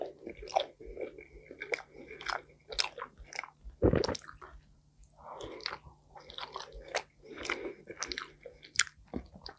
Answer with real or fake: real